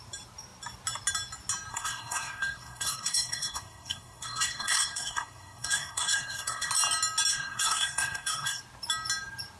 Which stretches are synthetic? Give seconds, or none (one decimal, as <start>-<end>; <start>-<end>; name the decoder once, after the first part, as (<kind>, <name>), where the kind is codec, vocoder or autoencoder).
1.7-6.7 (codec, SNAC); 7.3-8.6